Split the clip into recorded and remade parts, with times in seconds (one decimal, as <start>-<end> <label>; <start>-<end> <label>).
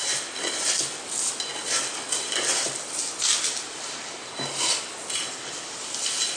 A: 0.0-6.4 recorded